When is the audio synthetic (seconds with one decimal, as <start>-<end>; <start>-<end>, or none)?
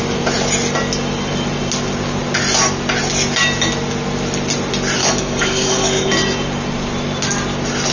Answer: 5.0-6.1